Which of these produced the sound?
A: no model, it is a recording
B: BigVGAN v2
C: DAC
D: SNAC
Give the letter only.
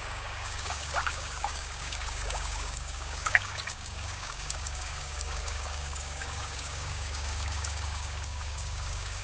C